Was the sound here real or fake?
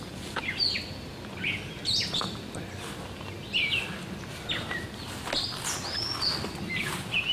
real